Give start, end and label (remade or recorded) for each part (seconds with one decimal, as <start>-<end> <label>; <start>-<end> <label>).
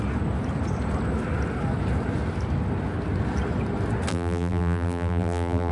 0.0-4.1 recorded; 4.1-5.7 remade